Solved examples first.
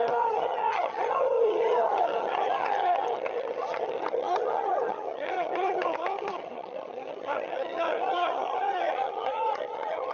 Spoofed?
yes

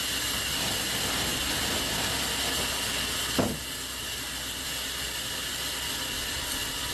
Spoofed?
no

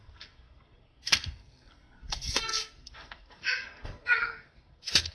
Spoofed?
yes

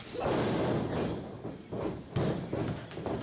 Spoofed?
no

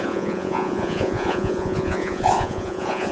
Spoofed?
yes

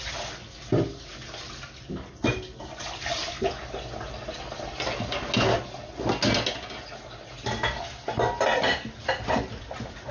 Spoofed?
no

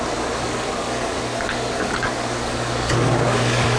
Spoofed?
yes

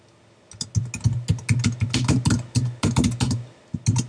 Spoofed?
no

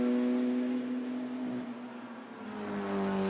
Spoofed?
no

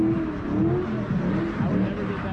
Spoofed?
no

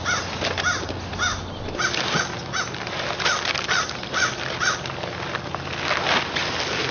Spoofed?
no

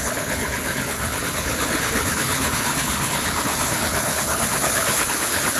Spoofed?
yes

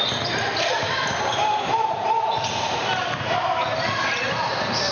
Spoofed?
yes